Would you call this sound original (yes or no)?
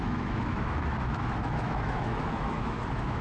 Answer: no